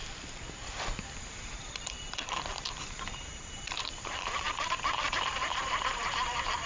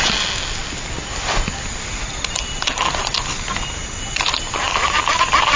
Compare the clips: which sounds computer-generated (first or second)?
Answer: first